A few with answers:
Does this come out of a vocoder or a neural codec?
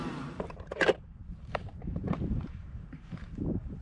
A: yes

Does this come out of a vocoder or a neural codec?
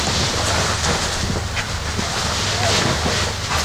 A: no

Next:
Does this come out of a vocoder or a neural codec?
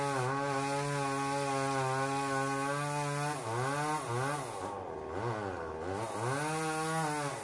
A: no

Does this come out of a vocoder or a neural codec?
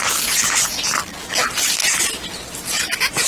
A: no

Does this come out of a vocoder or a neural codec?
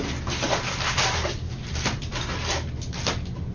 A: no